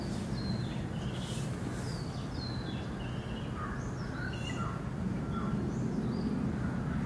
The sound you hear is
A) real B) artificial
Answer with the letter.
A